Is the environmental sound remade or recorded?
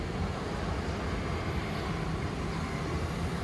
recorded